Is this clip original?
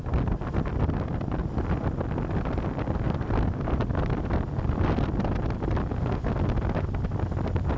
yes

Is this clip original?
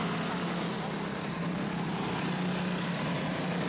yes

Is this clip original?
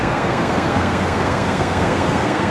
no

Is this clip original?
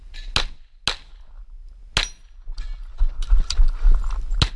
yes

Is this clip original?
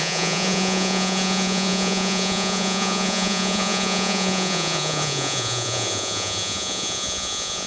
no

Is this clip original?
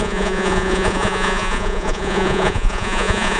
no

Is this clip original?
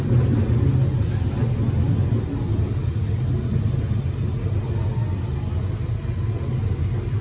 yes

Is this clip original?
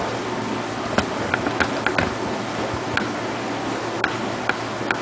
yes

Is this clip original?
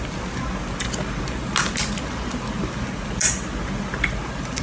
yes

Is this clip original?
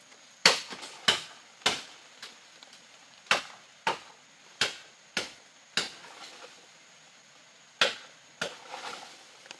yes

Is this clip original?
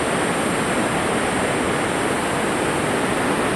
yes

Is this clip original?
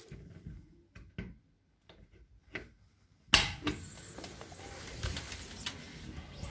yes